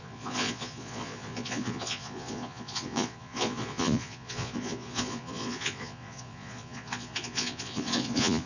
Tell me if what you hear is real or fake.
fake